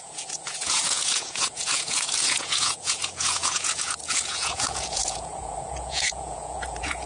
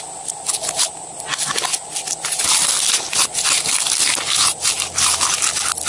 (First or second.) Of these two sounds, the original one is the second